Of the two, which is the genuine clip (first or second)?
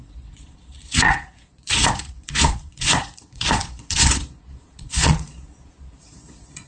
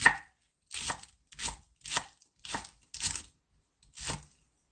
second